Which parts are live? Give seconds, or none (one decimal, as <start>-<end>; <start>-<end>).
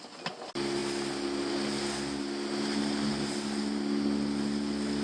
0.0-5.0